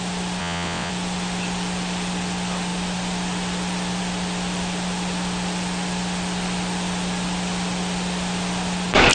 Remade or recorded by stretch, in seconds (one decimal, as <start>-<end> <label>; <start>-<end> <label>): 0.0-0.4 recorded; 0.4-0.9 remade; 0.9-9.1 recorded